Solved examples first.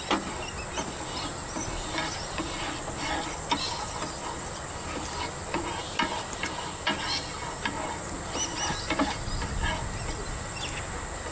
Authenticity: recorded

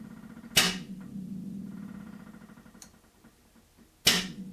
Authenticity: recorded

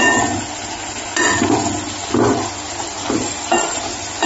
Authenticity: recorded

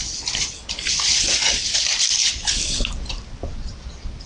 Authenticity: recorded